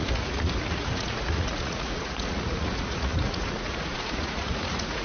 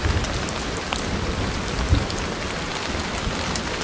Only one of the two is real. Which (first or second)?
second